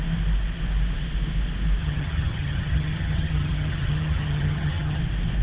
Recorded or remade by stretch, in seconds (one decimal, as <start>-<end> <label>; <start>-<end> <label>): 0.0-1.8 recorded; 1.8-5.0 remade; 5.0-5.4 recorded